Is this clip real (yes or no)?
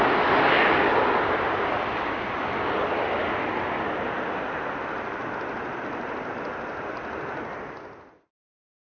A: yes